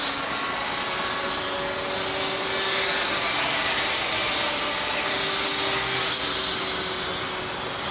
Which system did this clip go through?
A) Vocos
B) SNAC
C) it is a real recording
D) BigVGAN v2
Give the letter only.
C